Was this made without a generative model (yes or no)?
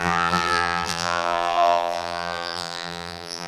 no